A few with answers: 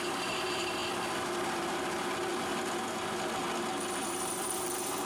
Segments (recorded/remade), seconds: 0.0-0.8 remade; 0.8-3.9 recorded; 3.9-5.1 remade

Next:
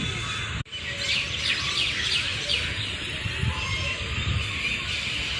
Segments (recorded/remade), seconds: 0.0-2.3 recorded; 2.3-3.3 remade; 3.3-5.4 recorded

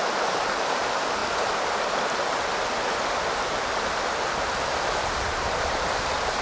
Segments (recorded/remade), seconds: 0.0-1.2 remade; 1.2-5.0 recorded; 5.0-6.4 remade